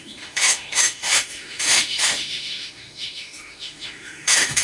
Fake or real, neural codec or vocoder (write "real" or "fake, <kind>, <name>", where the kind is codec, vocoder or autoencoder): fake, autoencoder, DAC-VAE